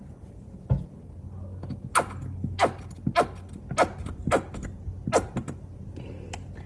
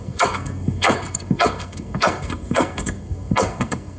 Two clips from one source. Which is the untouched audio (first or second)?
first